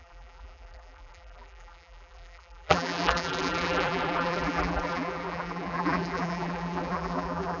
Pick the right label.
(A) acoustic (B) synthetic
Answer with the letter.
B